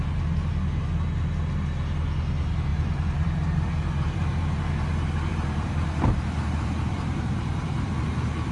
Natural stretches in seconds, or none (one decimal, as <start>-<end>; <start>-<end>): 0.0-2.7; 4.7-5.3